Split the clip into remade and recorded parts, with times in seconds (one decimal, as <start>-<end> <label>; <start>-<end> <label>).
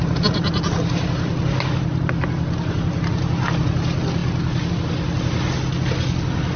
0.0-6.6 recorded